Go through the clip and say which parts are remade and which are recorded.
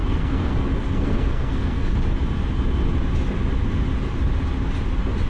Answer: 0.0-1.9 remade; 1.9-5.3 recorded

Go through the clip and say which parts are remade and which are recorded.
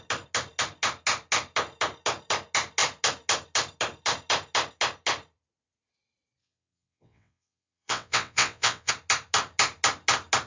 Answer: 0.0-6.4 recorded; 6.4-8.9 remade; 8.9-10.5 recorded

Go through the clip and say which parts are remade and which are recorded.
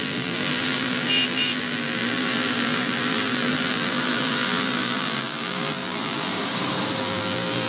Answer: 0.0-6.3 remade; 6.3-7.0 recorded; 7.0-7.7 remade